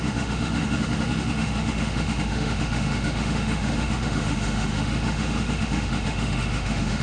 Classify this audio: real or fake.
fake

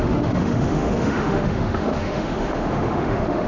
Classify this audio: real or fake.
fake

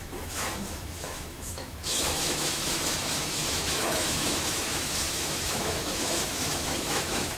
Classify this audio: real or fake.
fake